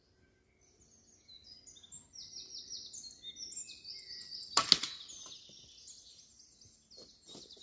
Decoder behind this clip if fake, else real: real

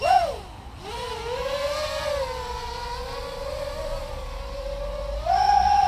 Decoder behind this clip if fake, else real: real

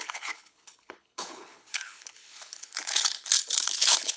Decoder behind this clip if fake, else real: fake, codec, HILCodec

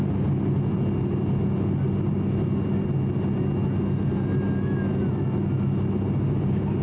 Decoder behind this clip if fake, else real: real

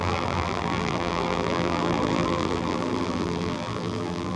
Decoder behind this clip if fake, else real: fake, vocoder, BigVGAN v2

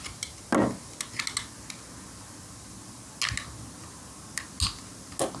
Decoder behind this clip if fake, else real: real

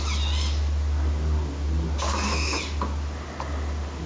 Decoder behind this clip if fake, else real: real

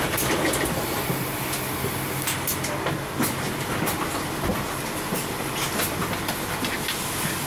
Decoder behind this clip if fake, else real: real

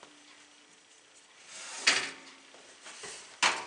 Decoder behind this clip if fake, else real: real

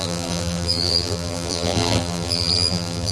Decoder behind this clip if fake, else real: fake, vocoder, BigVGAN v2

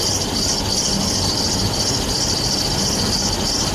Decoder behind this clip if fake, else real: real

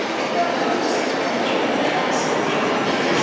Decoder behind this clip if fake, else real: real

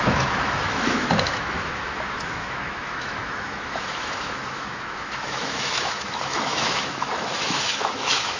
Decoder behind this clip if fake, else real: fake, autoencoder, DAC-VAE